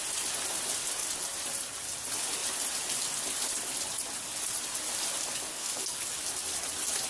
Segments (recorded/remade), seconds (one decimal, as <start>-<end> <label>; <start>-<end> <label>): 0.0-5.5 recorded; 5.5-6.0 remade; 6.0-7.1 recorded

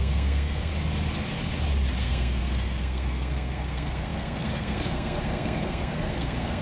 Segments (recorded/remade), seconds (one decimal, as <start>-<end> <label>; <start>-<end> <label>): 0.0-0.7 remade; 0.7-2.0 recorded; 2.0-6.6 remade

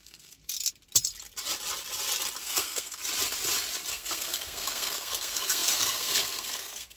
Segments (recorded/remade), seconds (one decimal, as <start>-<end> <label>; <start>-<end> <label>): 0.0-0.4 remade; 0.4-2.4 recorded; 2.4-3.0 remade; 3.0-3.9 recorded; 3.9-7.0 remade

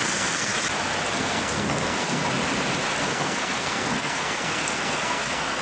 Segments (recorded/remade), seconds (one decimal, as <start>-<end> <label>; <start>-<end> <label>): 0.0-0.5 remade; 0.5-1.1 recorded; 1.1-2.2 remade; 2.2-3.0 recorded; 3.0-5.6 remade

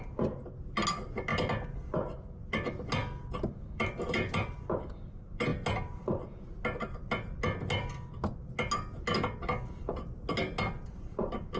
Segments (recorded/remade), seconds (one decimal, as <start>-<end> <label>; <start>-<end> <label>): 0.0-11.6 recorded

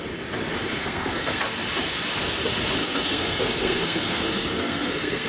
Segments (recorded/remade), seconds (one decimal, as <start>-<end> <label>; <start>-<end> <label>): 0.0-0.7 recorded; 0.7-1.4 remade; 1.4-2.8 recorded; 2.8-5.3 remade

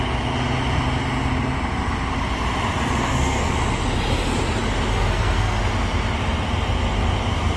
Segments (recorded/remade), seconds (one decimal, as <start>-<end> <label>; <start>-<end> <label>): 0.0-3.0 recorded; 3.0-3.5 remade; 3.5-4.9 recorded; 4.9-5.6 remade; 5.6-7.6 recorded

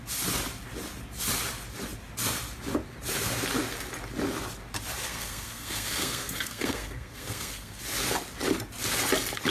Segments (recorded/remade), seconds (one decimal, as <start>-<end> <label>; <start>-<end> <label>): 0.0-5.0 recorded; 5.0-7.8 remade; 7.8-9.5 recorded